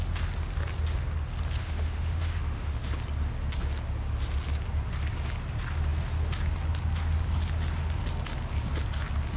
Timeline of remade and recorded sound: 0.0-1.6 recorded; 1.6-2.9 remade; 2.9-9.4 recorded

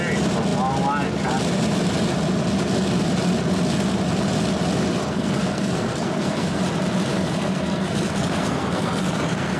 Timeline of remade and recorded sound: 0.0-5.0 recorded; 5.0-6.6 remade; 6.6-7.1 recorded; 7.1-9.6 remade

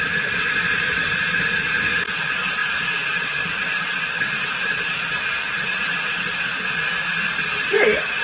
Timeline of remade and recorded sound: 0.0-8.2 recorded

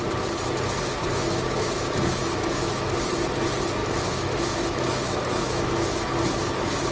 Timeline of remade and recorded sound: 0.0-1.1 recorded; 1.1-2.9 remade; 2.9-3.8 recorded; 3.8-6.0 remade; 6.0-6.9 recorded

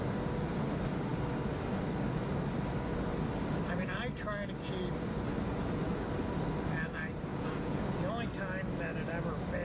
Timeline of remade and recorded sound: 0.0-7.3 recorded; 7.3-7.9 remade; 7.9-9.6 recorded

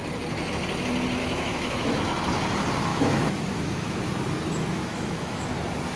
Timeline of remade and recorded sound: 0.0-1.2 recorded; 1.2-2.0 remade; 2.0-2.9 recorded; 2.9-4.0 remade; 4.0-4.9 recorded; 4.9-5.5 remade; 5.5-6.0 recorded

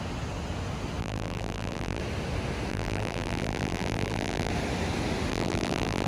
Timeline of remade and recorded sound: 0.0-1.0 recorded; 1.0-2.0 remade; 2.0-2.7 recorded; 2.7-4.5 remade; 4.5-5.3 recorded; 5.3-6.1 remade